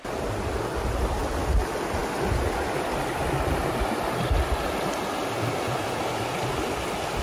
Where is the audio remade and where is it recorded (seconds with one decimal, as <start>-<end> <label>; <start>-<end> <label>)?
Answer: 0.0-7.2 recorded